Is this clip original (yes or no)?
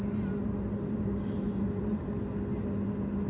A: yes